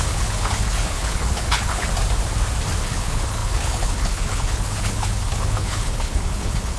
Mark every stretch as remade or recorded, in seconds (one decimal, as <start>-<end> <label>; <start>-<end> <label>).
0.0-1.9 remade; 1.9-2.8 recorded; 2.8-6.8 remade